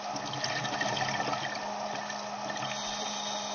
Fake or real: real